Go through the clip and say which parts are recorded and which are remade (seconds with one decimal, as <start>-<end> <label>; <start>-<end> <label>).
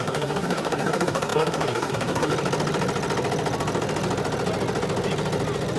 0.0-2.3 remade; 2.3-5.8 recorded